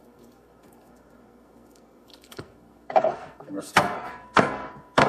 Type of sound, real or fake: fake